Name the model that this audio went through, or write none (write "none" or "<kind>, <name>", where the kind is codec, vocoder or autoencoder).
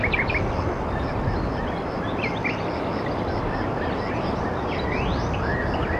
none